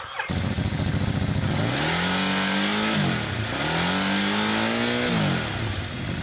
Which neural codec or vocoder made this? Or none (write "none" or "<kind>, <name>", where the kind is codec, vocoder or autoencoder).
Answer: none